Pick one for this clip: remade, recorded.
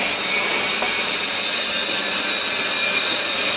remade